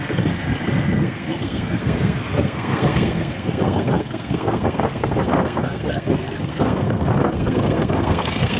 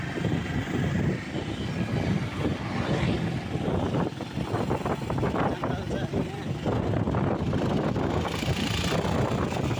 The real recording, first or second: second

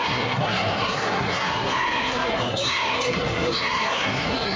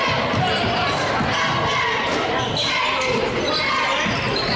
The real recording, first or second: second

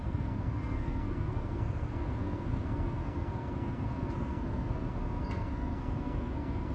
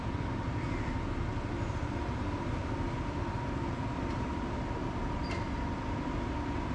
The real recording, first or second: second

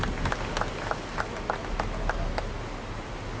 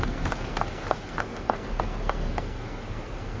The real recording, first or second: first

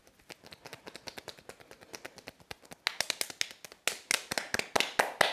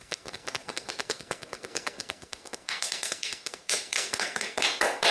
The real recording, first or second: first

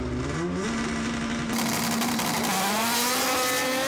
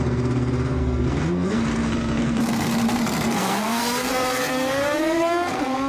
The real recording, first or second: first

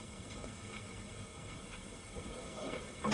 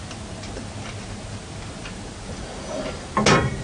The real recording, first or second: second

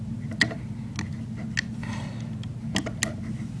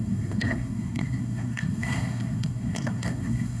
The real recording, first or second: first